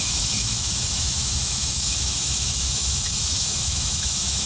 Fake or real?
fake